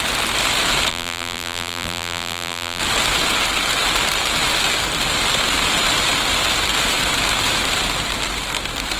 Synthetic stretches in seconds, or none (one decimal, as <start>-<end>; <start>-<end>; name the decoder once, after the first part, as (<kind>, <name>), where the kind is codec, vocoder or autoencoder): 0.9-2.8 (vocoder, BigVGAN v2)